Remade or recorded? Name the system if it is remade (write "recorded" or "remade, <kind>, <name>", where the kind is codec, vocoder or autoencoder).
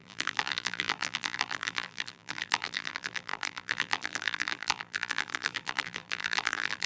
remade, vocoder, BigVGAN v2